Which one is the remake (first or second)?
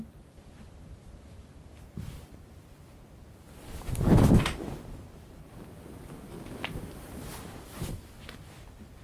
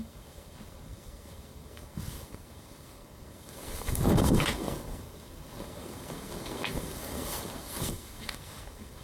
second